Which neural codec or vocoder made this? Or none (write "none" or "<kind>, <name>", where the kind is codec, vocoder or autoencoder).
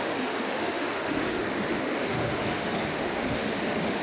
autoencoder, DAC-VAE